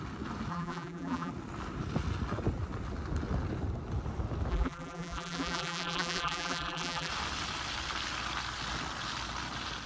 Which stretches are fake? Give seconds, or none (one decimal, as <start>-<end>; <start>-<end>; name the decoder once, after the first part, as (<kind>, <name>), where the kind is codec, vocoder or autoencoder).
0.5-1.3 (vocoder, BigVGAN v2); 4.5-7.1